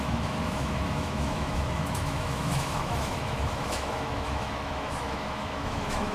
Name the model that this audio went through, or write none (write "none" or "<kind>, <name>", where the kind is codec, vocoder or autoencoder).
autoencoder, DAC-VAE